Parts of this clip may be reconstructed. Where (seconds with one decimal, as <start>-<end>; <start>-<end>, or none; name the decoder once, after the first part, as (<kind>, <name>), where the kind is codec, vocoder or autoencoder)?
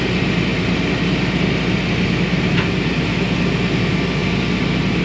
none